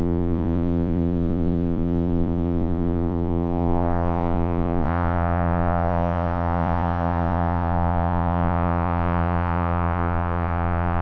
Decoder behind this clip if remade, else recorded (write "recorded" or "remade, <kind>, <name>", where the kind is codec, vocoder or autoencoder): remade, vocoder, Vocos